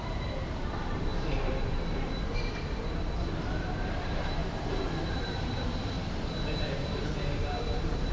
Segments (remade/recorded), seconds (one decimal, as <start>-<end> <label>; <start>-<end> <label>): 0.0-8.1 remade